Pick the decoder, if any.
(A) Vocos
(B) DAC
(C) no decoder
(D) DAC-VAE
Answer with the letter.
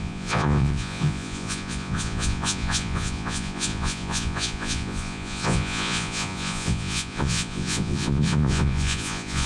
A